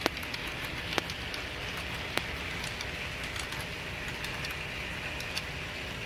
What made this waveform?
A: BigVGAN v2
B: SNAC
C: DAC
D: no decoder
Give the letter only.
D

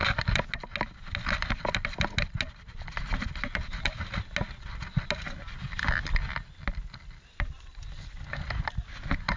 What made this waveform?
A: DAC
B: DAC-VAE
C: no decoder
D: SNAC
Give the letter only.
C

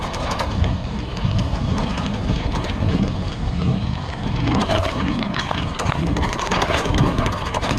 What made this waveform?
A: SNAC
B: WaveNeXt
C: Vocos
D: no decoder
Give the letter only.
A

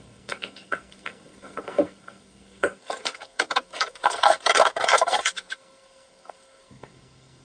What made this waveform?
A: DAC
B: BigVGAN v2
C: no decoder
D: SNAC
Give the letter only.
D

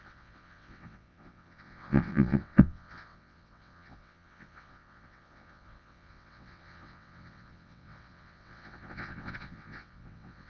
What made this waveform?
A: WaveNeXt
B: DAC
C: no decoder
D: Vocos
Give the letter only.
A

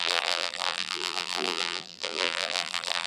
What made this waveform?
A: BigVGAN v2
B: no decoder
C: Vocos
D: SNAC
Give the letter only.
A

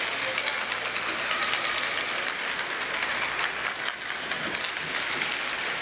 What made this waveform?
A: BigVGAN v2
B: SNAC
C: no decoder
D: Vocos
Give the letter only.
C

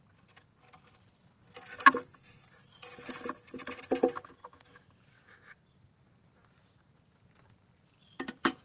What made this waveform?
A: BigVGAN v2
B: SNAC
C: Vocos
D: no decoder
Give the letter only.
D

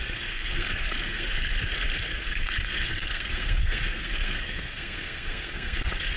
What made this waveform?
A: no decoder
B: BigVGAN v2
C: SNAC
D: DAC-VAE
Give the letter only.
C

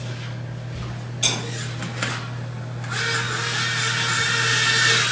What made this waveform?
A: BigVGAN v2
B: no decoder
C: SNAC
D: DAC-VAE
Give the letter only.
B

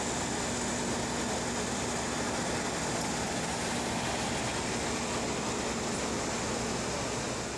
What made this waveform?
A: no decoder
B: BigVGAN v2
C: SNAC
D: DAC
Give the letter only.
A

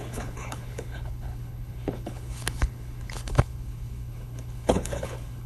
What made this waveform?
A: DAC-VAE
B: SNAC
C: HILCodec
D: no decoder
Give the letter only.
C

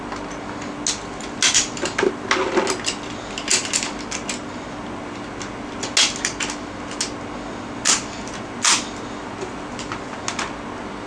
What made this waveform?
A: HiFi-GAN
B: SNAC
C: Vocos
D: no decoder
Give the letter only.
D